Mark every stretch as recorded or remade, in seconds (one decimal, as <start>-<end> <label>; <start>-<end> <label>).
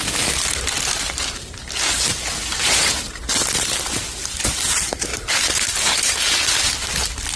0.0-5.1 recorded; 5.1-6.7 remade; 6.7-7.4 recorded